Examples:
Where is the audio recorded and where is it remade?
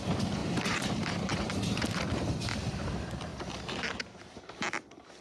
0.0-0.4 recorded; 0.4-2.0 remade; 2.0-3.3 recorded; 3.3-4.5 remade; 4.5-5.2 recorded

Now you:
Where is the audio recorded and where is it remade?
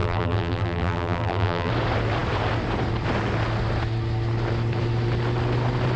0.0-1.7 remade; 1.7-6.0 recorded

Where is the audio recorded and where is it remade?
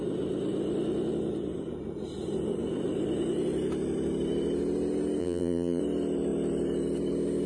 0.0-5.2 recorded; 5.2-5.8 remade; 5.8-7.5 recorded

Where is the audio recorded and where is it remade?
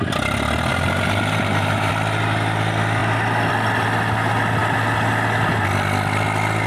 0.0-0.7 recorded; 0.7-1.9 remade; 1.9-6.7 recorded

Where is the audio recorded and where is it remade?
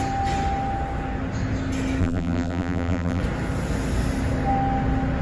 0.0-2.0 recorded; 2.0-3.2 remade; 3.2-5.2 recorded